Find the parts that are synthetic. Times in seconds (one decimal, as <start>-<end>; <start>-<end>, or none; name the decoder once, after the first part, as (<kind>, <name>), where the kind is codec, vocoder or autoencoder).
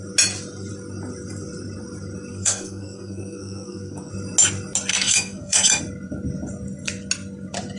2.3-4.1 (codec, SNAC); 4.9-5.8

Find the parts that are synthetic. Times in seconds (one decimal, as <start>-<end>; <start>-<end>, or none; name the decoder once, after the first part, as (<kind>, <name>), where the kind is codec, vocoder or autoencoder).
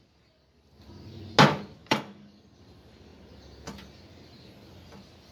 1.8-2.4 (codec, DAC)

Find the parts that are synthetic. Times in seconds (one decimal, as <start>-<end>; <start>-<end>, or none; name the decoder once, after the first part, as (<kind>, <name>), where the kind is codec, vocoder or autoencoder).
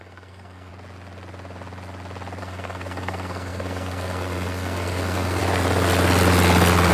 0.0-0.7 (codec, SNAC); 2.4-5.4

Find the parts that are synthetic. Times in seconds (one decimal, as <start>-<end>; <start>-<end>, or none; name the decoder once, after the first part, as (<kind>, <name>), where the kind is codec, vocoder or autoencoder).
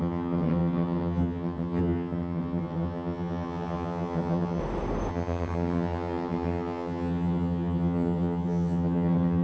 0.0-4.6 (vocoder, HiFi-GAN); 5.1-9.4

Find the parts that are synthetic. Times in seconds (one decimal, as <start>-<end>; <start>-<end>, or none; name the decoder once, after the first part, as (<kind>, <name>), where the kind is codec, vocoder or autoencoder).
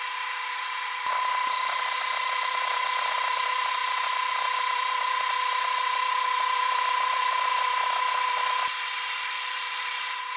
0.0-3.8 (vocoder, BigVGAN v2); 4.7-10.4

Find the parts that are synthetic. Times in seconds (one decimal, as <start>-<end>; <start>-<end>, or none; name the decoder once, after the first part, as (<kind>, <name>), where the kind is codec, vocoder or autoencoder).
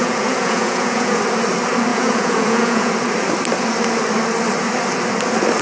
0.0-1.2 (vocoder, Vocos); 1.9-2.9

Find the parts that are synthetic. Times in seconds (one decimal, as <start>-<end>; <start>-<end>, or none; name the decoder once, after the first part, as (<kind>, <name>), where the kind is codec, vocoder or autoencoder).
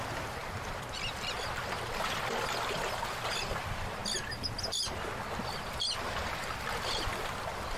0.0-4.0 (vocoder, BigVGAN v2); 6.8-7.8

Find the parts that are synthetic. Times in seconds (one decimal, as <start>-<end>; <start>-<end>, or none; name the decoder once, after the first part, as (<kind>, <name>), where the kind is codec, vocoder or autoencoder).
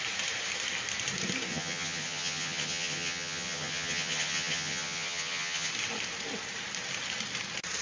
1.5-5.7 (vocoder, HiFi-GAN)